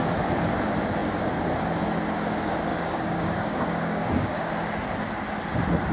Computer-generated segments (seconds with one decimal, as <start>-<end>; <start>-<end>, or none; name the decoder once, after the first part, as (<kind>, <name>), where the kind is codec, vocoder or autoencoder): 2.7-4.5 (codec, DAC)